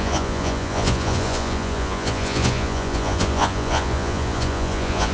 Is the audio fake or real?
fake